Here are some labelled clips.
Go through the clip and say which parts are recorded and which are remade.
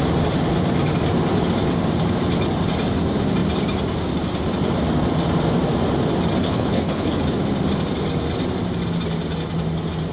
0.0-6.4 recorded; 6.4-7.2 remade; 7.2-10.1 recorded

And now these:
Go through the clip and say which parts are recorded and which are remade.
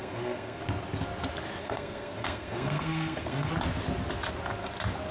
0.0-0.6 remade; 0.6-1.6 recorded; 1.6-3.5 remade; 3.5-5.1 recorded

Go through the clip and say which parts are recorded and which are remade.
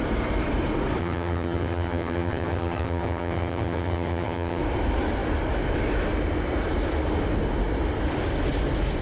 0.0-1.0 recorded; 1.0-4.6 remade; 4.6-9.0 recorded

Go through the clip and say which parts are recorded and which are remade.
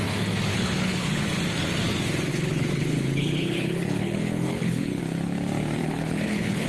0.0-0.5 recorded; 0.5-1.2 remade; 1.2-2.3 recorded; 2.3-5.0 remade; 5.0-5.8 recorded; 5.8-6.7 remade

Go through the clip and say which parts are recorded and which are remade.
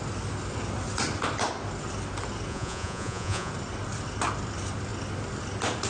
0.0-2.5 recorded; 2.5-3.5 remade; 3.5-5.9 recorded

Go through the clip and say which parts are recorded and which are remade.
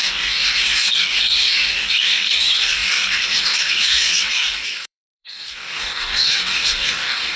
0.0-7.4 remade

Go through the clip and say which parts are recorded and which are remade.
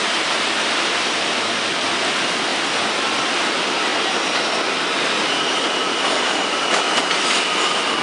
0.0-2.5 remade; 2.5-3.1 recorded; 3.1-8.0 remade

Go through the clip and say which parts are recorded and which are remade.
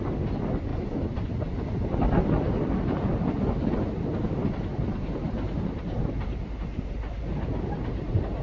0.0-4.7 recorded; 4.7-7.2 remade; 7.2-8.4 recorded